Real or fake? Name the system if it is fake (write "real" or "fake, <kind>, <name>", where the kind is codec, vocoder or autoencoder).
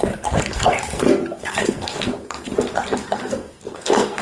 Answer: fake, codec, SNAC